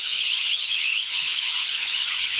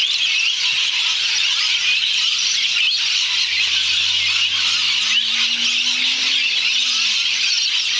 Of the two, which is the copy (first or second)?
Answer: first